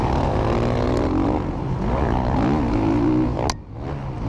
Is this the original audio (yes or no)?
yes